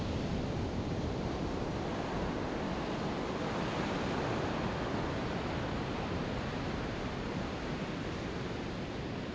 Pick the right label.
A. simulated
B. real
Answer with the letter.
B